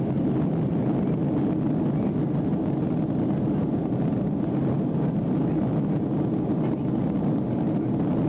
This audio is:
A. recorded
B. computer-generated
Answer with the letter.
A